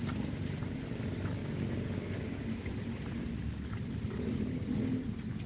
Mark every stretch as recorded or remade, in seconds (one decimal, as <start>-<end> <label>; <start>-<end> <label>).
0.0-1.4 recorded; 1.4-2.4 remade; 2.4-5.5 recorded